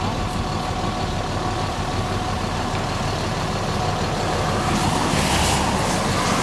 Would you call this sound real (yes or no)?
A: yes